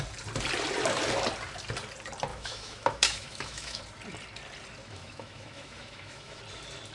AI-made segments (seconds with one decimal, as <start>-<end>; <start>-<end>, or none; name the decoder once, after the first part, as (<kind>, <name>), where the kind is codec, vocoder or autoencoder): 2.3-3.8 (autoencoder, DAC-VAE); 4.8-6.4

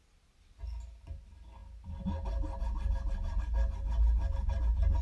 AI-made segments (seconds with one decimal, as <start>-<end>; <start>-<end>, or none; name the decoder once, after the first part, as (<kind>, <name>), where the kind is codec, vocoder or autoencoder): none

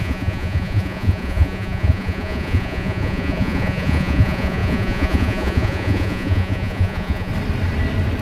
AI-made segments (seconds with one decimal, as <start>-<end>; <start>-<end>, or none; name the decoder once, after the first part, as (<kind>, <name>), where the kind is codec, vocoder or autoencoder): 0.0-7.3 (vocoder, Vocos)

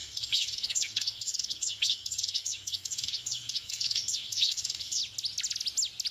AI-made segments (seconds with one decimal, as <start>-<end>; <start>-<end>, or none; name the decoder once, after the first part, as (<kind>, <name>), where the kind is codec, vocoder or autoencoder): 0.0-5.0 (codec, DAC)

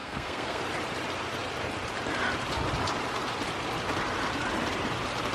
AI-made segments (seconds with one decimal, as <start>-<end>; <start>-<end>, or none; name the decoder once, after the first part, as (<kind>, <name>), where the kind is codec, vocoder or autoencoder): 0.0-0.6 (codec, SNAC)

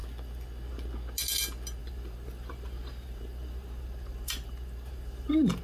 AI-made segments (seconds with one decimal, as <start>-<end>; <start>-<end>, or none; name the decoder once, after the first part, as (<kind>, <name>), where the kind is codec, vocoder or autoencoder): 1.8-5.6 (vocoder, BigVGAN v2)

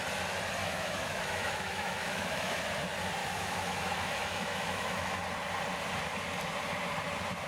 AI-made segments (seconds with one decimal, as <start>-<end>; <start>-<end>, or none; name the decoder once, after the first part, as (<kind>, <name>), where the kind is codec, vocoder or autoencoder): 0.6-2.6 (autoencoder, DAC-VAE); 3.2-5.2

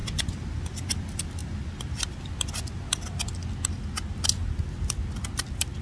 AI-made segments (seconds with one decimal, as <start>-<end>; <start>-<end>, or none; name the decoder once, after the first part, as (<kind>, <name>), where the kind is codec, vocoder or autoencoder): none